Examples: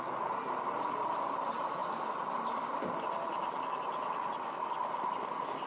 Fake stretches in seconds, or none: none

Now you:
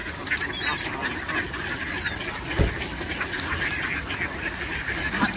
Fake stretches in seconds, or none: none

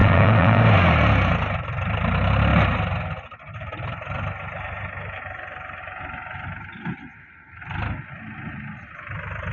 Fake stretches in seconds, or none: 0.0-0.6 (vocoder, Vocos)

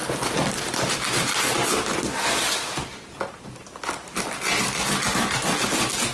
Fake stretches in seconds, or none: none

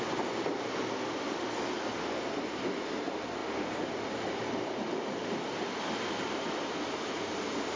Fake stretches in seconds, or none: none